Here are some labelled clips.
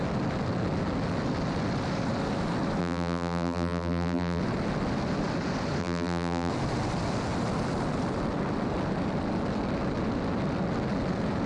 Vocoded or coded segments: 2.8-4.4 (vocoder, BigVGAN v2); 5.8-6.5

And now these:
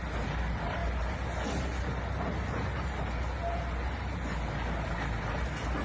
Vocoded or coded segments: none